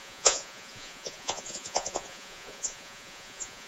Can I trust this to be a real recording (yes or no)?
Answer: no